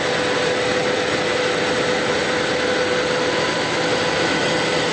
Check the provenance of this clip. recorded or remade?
recorded